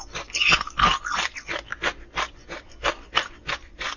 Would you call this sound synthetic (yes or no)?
no